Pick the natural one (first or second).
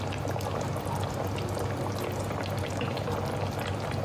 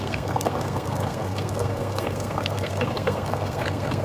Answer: first